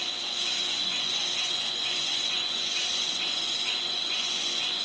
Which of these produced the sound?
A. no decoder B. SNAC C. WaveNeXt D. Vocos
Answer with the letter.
D